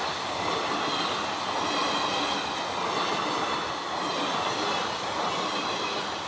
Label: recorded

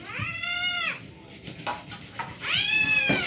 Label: recorded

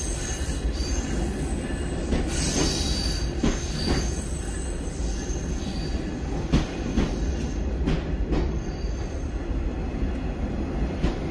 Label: recorded